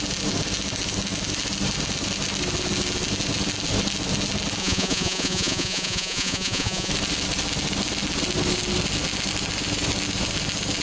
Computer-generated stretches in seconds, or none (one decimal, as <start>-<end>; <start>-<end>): 4.6-6.9

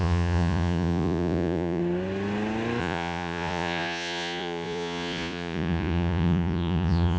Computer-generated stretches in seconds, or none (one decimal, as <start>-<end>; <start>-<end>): 0.0-1.8; 2.8-7.2

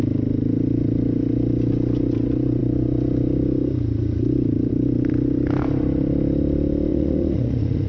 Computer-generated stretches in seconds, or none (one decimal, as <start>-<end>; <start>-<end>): 6.9-7.9

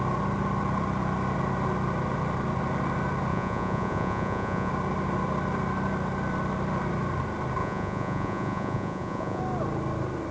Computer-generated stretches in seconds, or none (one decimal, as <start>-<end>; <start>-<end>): 3.3-4.7; 7.6-9.4

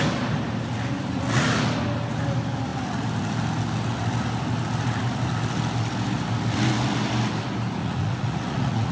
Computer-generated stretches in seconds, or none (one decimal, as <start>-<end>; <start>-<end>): 7.8-8.9

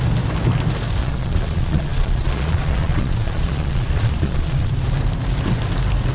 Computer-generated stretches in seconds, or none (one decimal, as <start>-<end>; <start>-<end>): 1.0-4.7